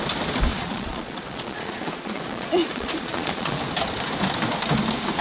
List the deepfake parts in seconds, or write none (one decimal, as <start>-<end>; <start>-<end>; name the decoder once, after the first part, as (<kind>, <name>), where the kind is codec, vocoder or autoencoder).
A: 0.5-3.6 (vocoder, Vocos)